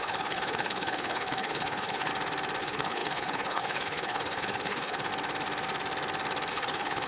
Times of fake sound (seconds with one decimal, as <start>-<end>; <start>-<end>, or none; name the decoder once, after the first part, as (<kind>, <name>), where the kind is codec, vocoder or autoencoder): 0.0-2.1 (codec, HILCodec); 2.6-5.1; 6.5-7.1